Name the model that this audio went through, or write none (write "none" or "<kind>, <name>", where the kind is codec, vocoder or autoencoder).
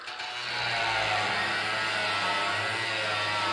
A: none